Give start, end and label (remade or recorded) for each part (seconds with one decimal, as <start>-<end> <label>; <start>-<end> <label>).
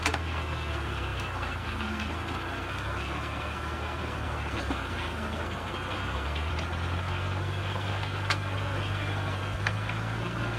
0.0-6.5 remade; 6.5-7.0 recorded; 7.0-10.6 remade